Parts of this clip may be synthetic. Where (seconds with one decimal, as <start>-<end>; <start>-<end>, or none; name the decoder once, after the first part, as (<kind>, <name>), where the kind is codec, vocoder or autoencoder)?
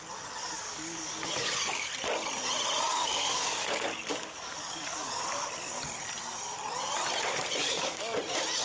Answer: 0.4-1.9 (codec, DAC); 2.9-5.5; 7.6-8.2